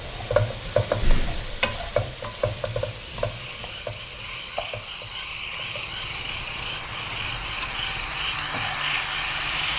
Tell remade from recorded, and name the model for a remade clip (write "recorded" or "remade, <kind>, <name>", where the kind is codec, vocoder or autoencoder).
recorded